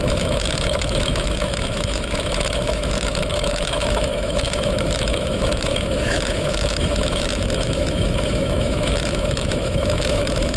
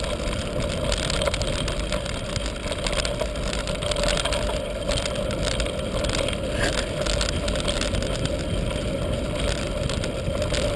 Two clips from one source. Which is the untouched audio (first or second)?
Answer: second